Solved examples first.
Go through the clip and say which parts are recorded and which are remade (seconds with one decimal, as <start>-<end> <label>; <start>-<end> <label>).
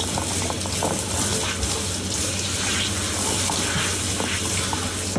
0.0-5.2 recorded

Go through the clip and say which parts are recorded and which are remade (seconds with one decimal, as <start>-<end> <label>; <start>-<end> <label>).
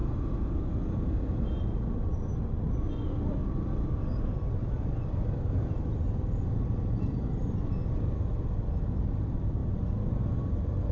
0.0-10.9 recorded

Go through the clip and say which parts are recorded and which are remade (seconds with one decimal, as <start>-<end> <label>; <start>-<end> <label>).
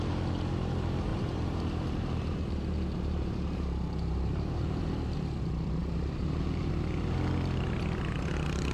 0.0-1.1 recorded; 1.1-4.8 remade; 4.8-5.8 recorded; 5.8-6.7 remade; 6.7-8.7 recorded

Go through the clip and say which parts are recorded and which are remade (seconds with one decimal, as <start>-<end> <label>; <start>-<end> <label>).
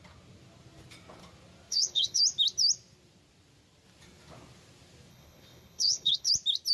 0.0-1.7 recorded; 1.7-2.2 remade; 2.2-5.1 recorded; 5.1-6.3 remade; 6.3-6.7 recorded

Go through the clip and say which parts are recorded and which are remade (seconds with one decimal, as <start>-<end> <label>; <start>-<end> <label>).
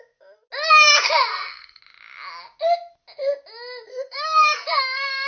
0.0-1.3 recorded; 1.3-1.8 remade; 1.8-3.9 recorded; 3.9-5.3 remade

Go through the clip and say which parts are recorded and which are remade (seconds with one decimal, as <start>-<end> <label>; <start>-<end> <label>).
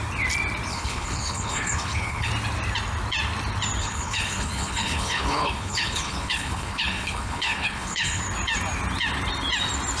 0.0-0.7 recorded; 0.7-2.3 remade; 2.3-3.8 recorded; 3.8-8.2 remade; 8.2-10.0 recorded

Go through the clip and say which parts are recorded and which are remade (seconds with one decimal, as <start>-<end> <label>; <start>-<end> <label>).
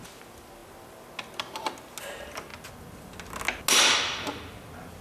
0.0-5.0 recorded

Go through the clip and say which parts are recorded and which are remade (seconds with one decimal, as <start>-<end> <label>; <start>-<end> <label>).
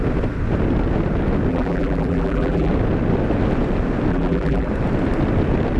0.0-1.5 recorded; 1.5-2.7 remade; 2.7-4.1 recorded; 4.1-4.7 remade; 4.7-5.8 recorded